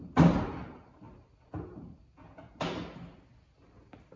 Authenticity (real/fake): real